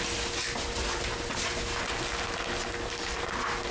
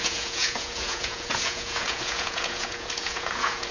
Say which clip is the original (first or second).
first